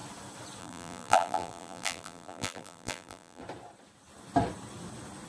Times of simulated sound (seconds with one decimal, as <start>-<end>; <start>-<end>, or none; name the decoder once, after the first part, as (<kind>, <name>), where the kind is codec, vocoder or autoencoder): 0.6-3.4 (vocoder, BigVGAN v2)